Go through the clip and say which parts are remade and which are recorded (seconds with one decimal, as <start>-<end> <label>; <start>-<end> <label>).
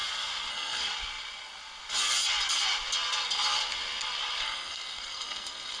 0.0-0.5 recorded; 0.5-0.9 remade; 0.9-4.4 recorded; 4.4-5.8 remade